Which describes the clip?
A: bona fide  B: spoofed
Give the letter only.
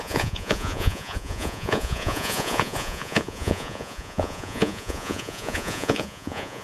B